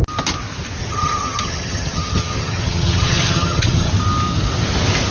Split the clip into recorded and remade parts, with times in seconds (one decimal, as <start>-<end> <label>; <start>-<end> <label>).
0.0-0.8 recorded; 0.8-3.9 remade; 3.9-5.1 recorded